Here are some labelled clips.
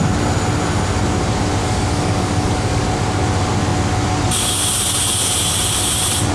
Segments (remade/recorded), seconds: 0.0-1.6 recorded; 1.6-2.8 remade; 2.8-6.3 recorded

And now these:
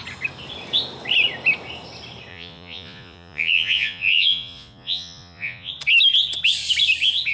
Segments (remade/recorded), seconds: 0.0-2.3 recorded; 2.3-5.7 remade; 5.7-7.3 recorded

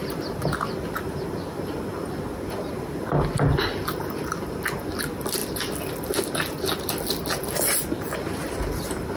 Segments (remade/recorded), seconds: 0.0-9.2 recorded

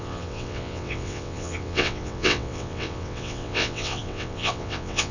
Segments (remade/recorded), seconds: 0.0-5.1 remade

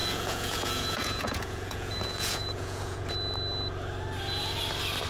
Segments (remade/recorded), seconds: 0.0-3.1 remade; 3.1-5.1 recorded